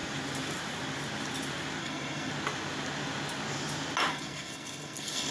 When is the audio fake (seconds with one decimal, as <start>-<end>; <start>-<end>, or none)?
1.8-2.3; 4.1-5.3